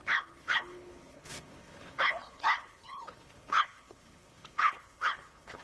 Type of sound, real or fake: fake